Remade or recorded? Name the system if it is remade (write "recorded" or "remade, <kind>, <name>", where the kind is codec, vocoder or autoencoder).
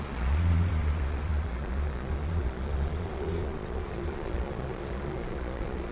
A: remade, vocoder, Vocos